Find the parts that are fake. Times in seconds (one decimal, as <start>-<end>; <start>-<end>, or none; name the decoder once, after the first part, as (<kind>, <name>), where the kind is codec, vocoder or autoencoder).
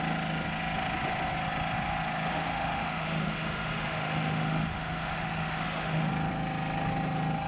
2.3-6.1 (autoencoder, DAC-VAE)